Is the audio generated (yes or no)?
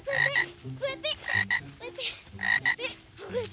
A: no